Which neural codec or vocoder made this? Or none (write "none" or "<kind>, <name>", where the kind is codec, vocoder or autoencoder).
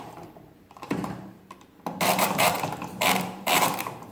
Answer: vocoder, BigVGAN v2